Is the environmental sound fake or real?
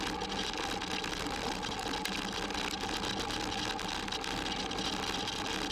real